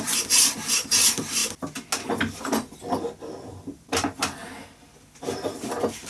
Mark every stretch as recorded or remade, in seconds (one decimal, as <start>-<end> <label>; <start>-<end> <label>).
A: 0.0-1.4 remade; 1.4-3.4 recorded; 3.4-4.4 remade; 4.4-5.2 recorded; 5.2-6.1 remade